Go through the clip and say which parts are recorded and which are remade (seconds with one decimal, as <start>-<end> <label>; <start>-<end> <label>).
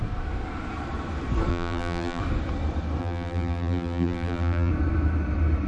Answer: 0.0-1.5 recorded; 1.5-2.2 remade; 2.2-3.0 recorded; 3.0-4.7 remade; 4.7-5.7 recorded